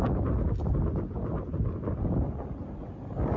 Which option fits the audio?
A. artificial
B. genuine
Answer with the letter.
B